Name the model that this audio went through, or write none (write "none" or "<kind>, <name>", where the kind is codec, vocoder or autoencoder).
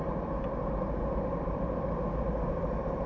none